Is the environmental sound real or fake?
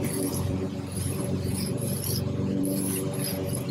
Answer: fake